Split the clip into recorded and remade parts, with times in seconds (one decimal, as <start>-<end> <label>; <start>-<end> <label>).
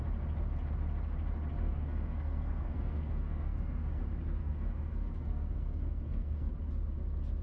0.0-1.6 recorded; 1.6-4.0 remade; 4.0-4.4 recorded; 4.4-6.5 remade; 6.5-7.4 recorded